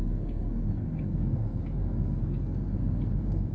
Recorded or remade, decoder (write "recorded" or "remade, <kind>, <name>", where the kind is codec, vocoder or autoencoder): remade, codec, SNAC